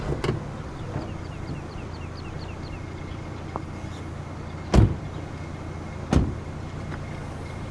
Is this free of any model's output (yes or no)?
yes